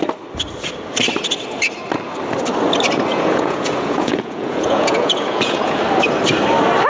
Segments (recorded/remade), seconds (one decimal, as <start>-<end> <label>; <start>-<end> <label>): 0.0-3.1 recorded; 3.1-5.8 remade; 5.8-6.9 recorded